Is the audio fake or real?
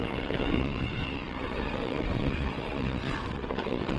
fake